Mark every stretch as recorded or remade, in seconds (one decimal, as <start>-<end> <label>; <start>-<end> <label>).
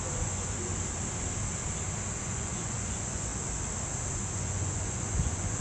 0.0-0.7 remade; 0.7-2.2 recorded; 2.2-3.3 remade; 3.3-4.1 recorded; 4.1-5.6 remade